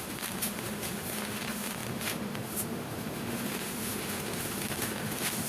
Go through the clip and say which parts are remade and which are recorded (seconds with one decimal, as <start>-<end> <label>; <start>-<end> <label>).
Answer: 0.0-5.5 remade